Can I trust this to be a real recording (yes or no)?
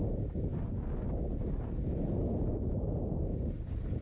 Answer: yes